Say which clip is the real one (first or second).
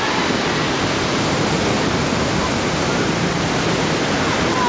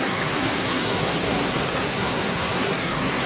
first